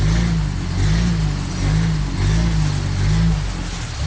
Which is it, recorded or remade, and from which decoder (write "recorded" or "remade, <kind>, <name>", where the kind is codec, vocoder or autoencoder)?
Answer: recorded